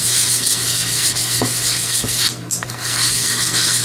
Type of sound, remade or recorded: remade